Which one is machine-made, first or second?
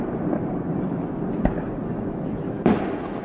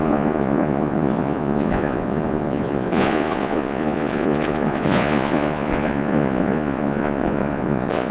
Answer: second